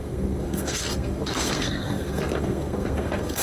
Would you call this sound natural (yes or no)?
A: no